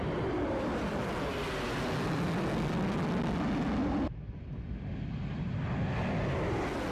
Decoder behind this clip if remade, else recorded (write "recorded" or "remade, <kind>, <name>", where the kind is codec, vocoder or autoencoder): recorded